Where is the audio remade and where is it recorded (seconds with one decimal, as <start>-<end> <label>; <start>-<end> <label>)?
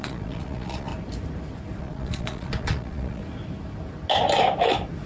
0.0-0.9 remade; 0.9-1.8 recorded; 1.8-3.2 remade; 3.2-5.1 recorded